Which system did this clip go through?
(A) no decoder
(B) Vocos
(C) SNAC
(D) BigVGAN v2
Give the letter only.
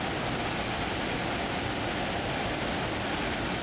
A